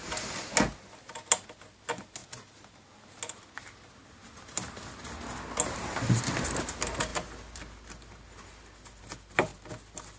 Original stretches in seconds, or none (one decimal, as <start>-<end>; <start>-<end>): 0.0-10.2